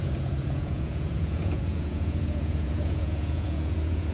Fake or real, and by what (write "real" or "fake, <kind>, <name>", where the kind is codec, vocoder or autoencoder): fake, vocoder, Vocos